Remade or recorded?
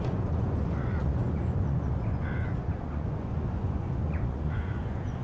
remade